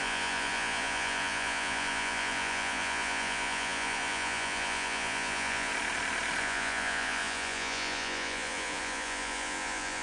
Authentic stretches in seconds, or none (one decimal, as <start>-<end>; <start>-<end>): 5.7-6.4